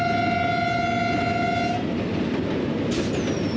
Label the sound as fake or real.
real